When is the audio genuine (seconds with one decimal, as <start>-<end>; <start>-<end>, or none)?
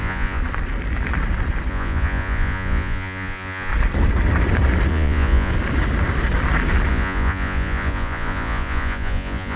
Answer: 0.4-1.7; 3.7-4.9; 5.5-6.9